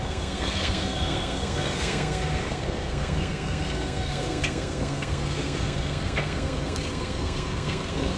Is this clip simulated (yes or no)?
yes